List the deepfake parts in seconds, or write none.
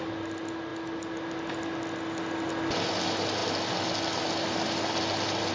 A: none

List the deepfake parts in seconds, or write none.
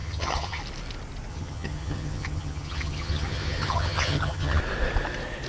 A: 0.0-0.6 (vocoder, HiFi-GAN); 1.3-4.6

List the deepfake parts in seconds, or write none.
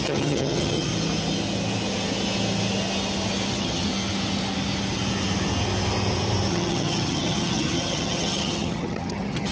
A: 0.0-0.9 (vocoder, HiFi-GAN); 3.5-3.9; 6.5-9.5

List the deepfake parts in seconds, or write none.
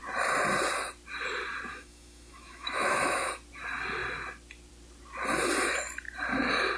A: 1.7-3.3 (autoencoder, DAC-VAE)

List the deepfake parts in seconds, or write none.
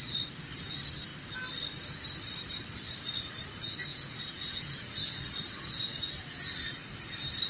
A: 3.9-5.2 (vocoder, Vocos)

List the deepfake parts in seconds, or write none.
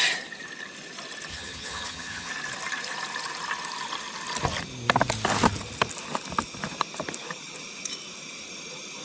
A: 1.3-2.3 (vocoder, HiFi-GAN)